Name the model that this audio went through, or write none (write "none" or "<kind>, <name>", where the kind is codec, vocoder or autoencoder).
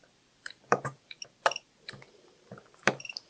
none